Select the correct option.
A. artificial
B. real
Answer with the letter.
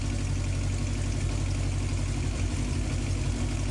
B